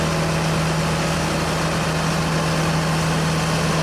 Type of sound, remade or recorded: recorded